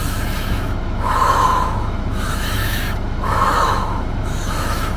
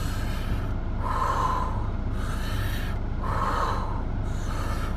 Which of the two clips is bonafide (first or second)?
second